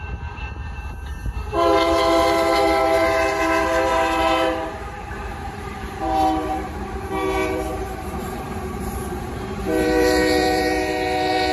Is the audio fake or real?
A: fake